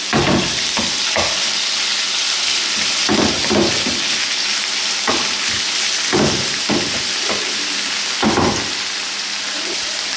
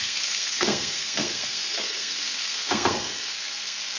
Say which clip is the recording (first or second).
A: first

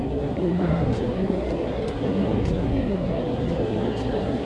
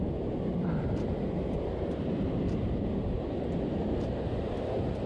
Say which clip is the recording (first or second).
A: second